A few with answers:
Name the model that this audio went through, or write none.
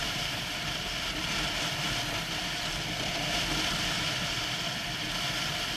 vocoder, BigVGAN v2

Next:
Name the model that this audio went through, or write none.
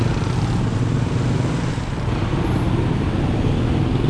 none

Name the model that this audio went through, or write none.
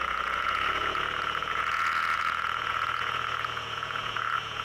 vocoder, Vocos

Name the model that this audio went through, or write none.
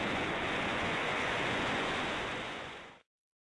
vocoder, Vocos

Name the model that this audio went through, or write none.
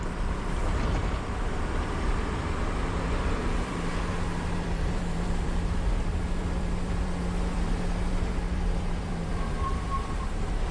vocoder, BigVGAN v2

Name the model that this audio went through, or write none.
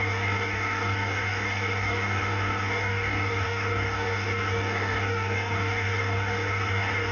codec, DAC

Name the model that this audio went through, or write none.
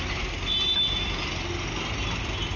none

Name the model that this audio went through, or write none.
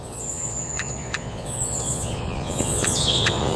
vocoder, Vocos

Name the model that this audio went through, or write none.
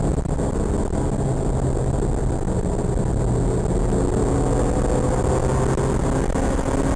none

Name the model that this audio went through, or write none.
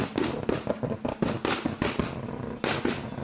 none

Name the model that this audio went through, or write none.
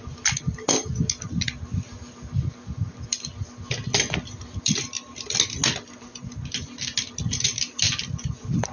none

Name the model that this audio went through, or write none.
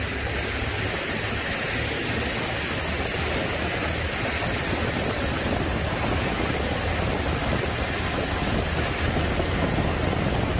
none